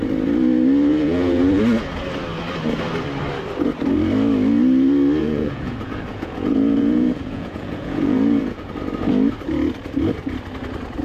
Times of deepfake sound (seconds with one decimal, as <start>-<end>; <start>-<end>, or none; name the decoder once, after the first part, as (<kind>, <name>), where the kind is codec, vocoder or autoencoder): 0.9-1.6 (vocoder, Vocos); 5.2-8.7